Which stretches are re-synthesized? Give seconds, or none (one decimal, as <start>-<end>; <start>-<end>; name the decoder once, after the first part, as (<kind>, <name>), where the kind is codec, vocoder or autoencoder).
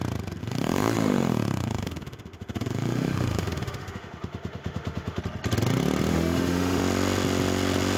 0.4-5.2 (autoencoder, DAC-VAE); 6.1-6.8